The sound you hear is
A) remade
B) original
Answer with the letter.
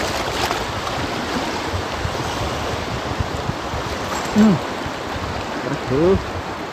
B